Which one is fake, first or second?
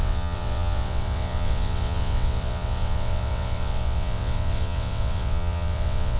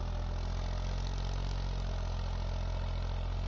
first